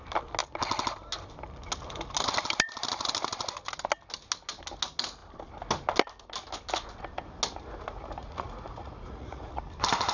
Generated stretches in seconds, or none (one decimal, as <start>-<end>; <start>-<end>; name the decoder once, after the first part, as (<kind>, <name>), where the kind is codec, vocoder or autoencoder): 8.2-9.6 (vocoder, Vocos)